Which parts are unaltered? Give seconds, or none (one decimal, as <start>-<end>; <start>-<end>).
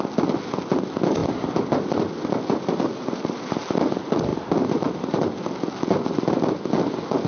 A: 0.0-1.2; 3.6-4.3; 5.2-7.3